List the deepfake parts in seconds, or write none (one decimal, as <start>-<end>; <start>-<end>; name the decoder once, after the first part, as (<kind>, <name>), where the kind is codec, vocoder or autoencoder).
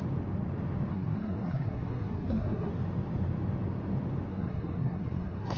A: 0.9-2.7 (codec, SNAC); 4.3-5.6